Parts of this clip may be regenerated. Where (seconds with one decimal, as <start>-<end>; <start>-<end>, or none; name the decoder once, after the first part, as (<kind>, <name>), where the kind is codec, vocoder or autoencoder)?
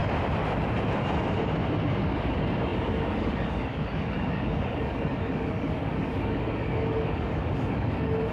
2.0-8.3 (codec, DAC)